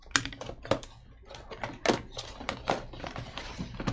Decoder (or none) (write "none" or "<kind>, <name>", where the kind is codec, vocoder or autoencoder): none